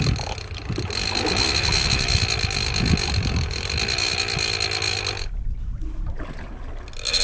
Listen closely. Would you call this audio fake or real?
real